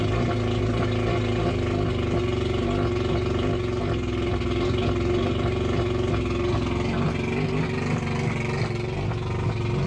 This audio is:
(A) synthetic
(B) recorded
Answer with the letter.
B